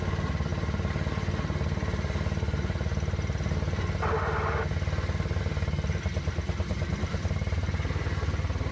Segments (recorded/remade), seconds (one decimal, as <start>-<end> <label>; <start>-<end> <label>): 0.0-8.7 recorded